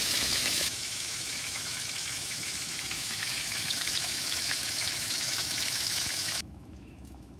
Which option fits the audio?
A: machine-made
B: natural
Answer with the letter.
A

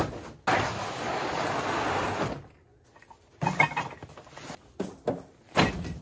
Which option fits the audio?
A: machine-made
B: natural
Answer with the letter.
B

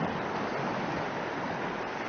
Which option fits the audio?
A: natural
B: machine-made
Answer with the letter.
A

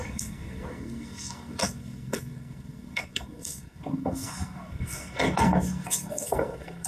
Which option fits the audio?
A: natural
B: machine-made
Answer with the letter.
B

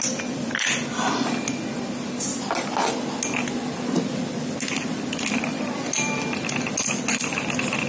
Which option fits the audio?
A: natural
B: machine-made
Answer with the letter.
A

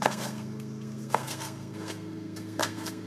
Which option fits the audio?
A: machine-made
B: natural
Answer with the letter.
A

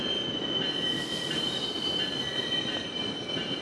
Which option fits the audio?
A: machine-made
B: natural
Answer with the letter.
B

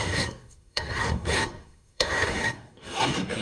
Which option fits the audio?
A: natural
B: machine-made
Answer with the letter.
B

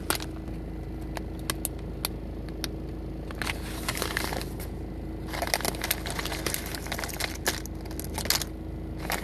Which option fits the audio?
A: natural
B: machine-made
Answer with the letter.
A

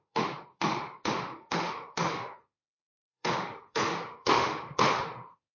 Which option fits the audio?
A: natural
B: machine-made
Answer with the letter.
B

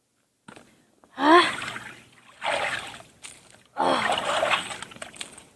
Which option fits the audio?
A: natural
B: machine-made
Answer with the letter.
A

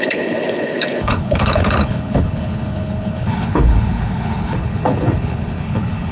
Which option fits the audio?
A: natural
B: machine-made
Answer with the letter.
B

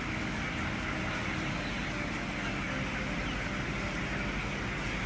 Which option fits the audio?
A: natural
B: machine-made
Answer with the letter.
A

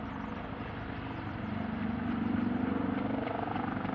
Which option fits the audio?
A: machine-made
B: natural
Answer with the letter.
B